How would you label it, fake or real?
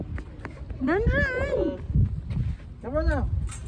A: real